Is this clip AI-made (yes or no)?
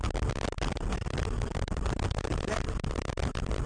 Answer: no